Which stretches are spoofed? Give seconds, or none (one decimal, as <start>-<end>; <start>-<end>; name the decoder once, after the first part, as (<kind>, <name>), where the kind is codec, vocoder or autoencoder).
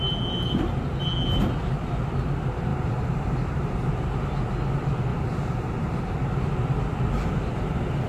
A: 2.7-3.9 (vocoder, BigVGAN v2); 5.1-6.3